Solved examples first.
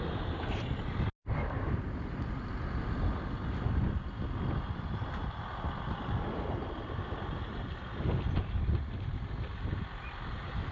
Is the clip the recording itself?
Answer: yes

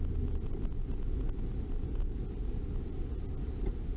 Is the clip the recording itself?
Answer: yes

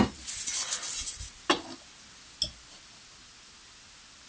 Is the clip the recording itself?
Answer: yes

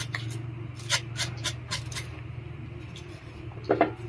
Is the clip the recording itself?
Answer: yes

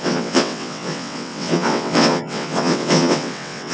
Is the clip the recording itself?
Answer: no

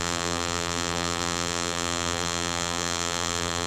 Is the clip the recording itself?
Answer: no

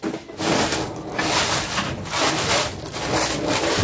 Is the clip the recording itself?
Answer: yes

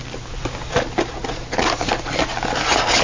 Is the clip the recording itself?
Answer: yes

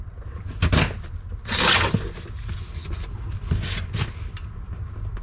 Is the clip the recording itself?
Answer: yes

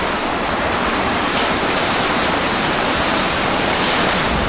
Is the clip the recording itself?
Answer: no